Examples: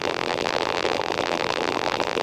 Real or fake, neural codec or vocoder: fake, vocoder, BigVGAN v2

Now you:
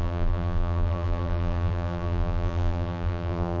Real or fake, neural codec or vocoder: fake, vocoder, BigVGAN v2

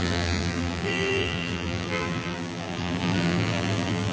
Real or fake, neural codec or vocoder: fake, vocoder, BigVGAN v2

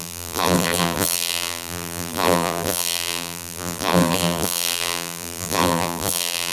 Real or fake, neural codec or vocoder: fake, vocoder, BigVGAN v2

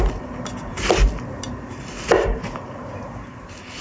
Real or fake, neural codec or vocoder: real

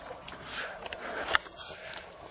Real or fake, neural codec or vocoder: fake, vocoder, BigVGAN v2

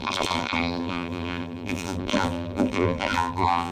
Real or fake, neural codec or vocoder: fake, vocoder, BigVGAN v2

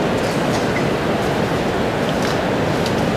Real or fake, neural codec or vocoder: real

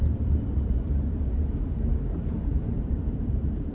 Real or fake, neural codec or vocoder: fake, vocoder, BigVGAN v2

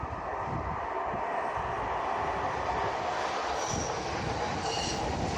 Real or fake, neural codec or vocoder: real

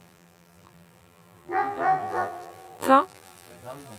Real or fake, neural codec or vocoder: fake, vocoder, BigVGAN v2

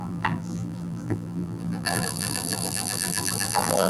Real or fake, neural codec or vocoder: fake, vocoder, BigVGAN v2